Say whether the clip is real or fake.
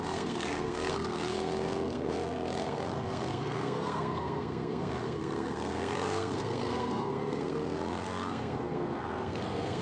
fake